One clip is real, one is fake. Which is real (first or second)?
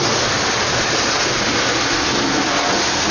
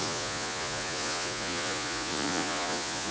first